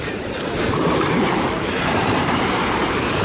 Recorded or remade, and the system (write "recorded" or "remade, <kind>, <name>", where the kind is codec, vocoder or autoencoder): remade, vocoder, BigVGAN v2